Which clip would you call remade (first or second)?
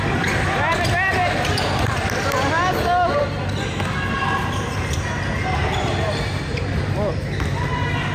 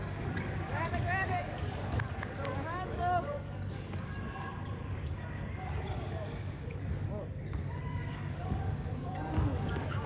second